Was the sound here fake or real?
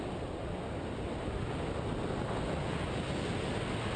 real